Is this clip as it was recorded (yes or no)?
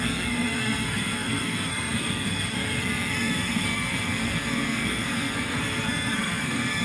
no